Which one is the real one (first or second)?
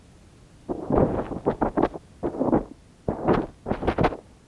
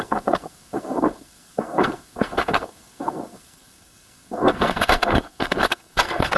first